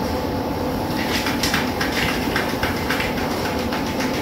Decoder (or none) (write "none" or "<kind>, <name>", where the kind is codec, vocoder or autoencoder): vocoder, BigVGAN v2